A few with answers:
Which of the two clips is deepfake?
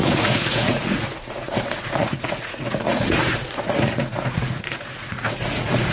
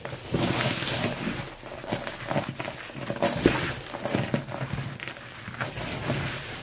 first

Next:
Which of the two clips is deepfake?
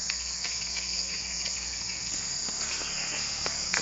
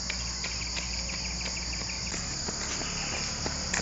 first